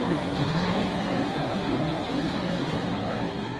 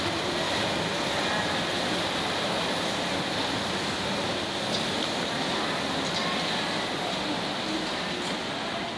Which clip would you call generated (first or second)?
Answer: first